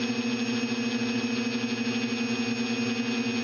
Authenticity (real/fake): real